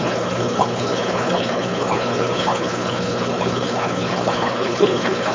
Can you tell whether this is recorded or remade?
remade